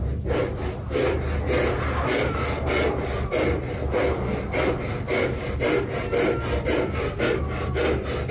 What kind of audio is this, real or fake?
real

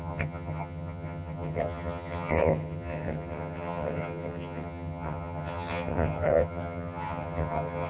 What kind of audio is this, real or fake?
fake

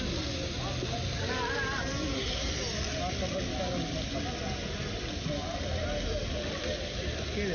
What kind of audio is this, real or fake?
real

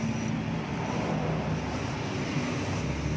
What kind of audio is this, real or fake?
real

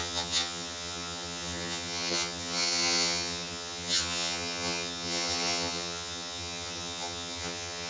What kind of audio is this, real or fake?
fake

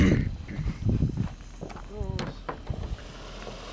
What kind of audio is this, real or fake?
real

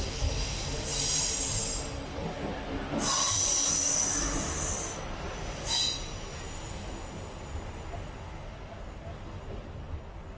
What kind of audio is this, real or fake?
real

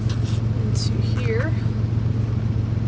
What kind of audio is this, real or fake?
real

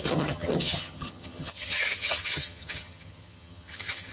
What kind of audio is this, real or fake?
fake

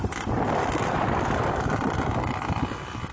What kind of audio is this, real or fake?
real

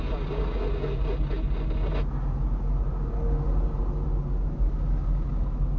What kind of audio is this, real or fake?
real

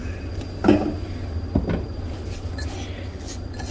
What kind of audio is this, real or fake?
real